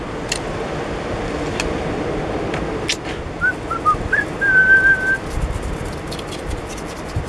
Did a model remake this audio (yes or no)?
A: no